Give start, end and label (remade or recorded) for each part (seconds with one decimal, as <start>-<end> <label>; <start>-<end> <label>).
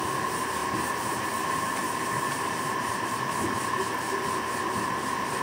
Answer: 0.0-0.6 recorded; 0.6-3.8 remade; 3.8-5.4 recorded